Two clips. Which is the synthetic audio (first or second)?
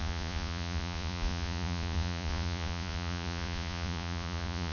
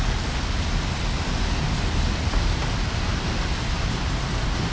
first